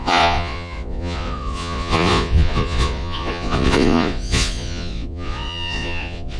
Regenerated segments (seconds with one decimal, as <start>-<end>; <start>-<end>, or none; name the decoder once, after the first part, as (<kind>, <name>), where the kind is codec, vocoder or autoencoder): 0.0-6.4 (vocoder, Vocos)